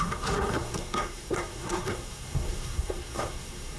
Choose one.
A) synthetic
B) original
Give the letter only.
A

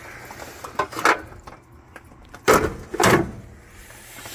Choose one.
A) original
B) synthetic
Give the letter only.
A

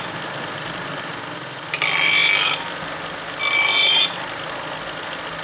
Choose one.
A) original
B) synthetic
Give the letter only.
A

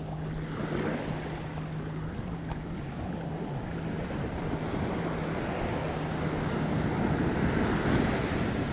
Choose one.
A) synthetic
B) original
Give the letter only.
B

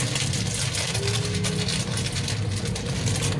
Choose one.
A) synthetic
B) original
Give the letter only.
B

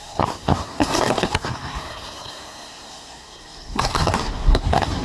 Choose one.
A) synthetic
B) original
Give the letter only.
A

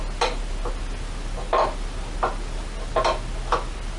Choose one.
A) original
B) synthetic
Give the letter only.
A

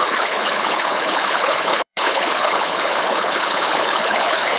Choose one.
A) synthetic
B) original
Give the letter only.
A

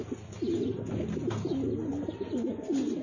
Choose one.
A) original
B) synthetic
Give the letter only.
A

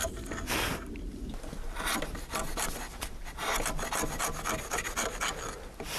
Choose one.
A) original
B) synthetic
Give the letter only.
A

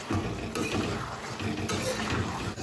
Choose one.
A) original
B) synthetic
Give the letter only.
A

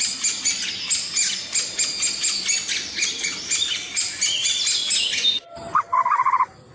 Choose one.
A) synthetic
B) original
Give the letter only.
B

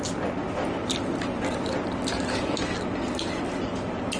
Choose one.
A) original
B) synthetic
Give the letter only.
A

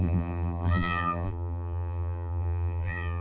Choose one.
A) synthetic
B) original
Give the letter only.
A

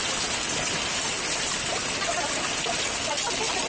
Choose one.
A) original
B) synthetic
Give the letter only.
A